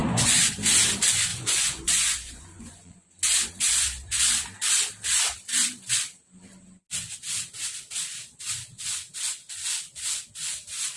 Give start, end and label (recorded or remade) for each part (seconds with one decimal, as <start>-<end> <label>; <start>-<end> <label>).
0.0-0.5 remade; 0.5-1.3 recorded; 1.3-3.1 remade; 3.1-11.0 recorded